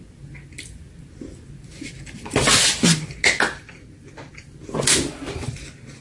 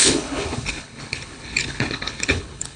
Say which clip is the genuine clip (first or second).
first